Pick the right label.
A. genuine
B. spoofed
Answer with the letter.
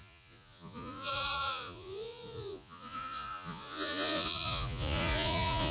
B